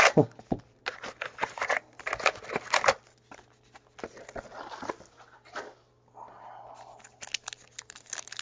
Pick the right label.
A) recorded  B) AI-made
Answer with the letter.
A